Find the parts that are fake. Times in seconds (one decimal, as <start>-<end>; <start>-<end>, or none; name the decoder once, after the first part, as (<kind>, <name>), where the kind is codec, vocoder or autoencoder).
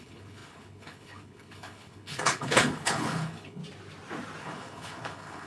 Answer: 0.0-3.6 (codec, HILCodec); 4.4-5.5